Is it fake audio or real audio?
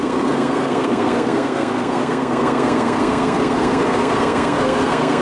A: fake